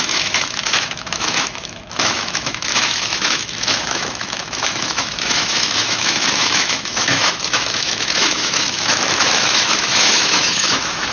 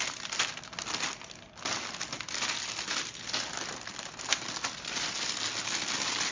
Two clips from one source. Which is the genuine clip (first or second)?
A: second